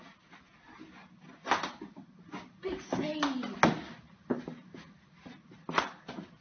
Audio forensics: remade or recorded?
recorded